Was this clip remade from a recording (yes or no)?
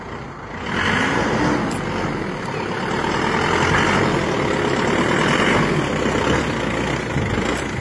no